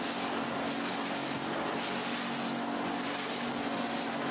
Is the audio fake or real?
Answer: real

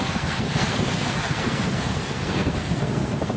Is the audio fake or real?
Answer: fake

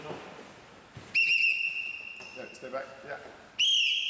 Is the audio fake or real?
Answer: real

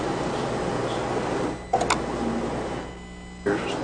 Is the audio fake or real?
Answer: real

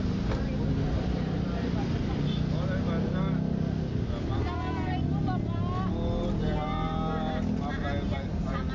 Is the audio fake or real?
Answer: real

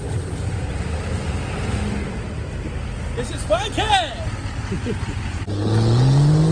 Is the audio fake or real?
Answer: real